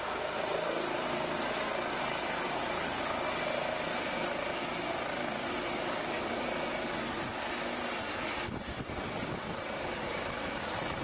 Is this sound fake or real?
real